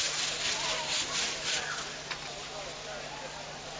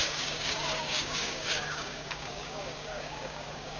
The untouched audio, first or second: first